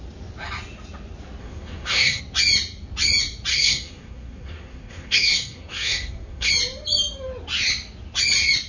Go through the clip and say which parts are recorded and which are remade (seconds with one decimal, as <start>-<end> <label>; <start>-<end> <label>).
0.0-1.4 recorded; 1.4-2.2 remade; 2.2-3.5 recorded; 3.5-6.5 remade; 6.5-8.7 recorded